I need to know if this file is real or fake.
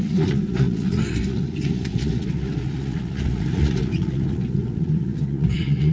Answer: fake